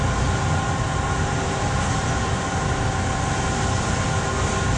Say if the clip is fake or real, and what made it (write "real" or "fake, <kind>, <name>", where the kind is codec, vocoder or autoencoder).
real